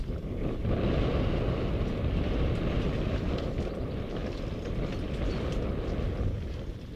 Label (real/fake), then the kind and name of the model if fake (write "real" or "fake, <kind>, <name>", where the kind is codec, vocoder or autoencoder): real